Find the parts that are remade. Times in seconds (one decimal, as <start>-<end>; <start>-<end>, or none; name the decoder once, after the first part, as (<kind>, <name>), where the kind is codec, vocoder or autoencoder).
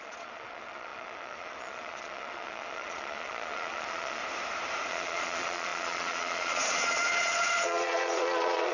0.0-4.2 (vocoder, Vocos); 4.9-8.7